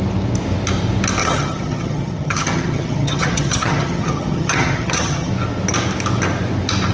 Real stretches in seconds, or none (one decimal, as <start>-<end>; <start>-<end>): 0.0-1.2; 5.3-6.9